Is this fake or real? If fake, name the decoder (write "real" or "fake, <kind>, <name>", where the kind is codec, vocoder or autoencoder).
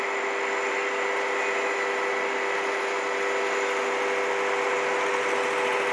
real